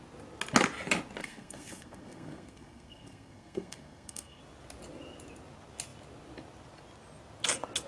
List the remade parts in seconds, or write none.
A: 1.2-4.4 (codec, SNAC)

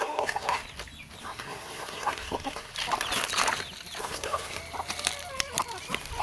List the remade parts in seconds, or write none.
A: 0.0-0.6 (codec, SNAC); 1.2-2.7; 4.0-4.6